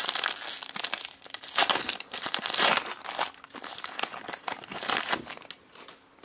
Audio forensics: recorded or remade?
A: recorded